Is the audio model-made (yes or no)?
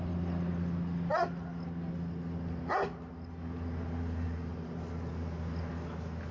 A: no